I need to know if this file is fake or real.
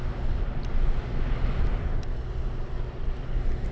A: real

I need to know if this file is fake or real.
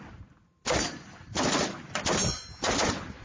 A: real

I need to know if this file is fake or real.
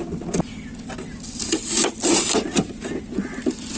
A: real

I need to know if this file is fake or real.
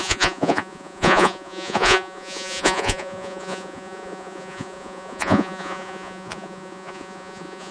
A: fake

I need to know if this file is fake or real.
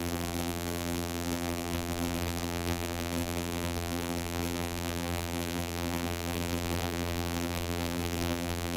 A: fake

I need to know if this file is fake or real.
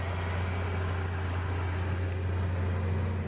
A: real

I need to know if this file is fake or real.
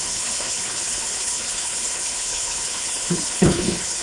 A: fake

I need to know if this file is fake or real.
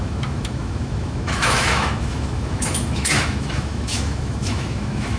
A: fake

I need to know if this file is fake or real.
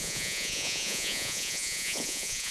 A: fake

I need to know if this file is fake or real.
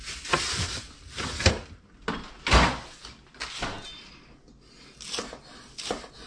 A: real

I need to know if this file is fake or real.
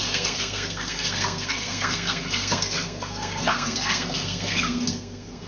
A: fake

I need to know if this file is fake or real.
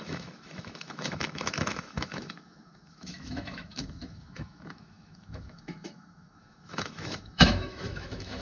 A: fake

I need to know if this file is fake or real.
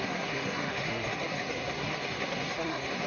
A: fake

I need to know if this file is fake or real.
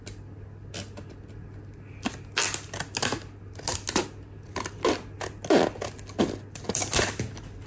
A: real